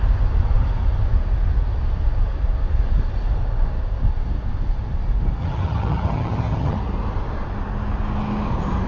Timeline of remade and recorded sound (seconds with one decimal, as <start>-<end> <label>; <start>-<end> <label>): 0.0-5.4 recorded; 5.4-6.8 remade; 6.8-8.9 recorded